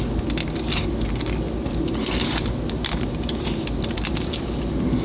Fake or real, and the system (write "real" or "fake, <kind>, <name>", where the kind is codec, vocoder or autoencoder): real